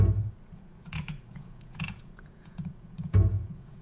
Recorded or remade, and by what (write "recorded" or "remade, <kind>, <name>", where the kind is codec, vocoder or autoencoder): remade, vocoder, Vocos